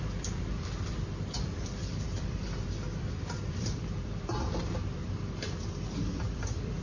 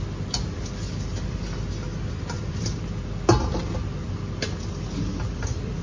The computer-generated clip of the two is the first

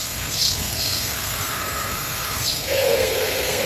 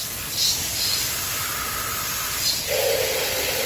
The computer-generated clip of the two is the first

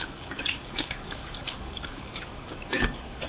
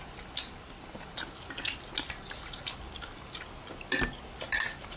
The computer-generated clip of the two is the first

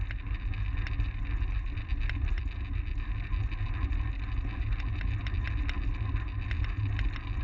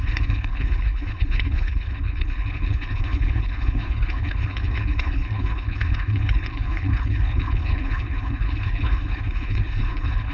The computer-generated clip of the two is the second